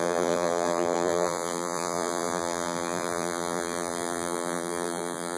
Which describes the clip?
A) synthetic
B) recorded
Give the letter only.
A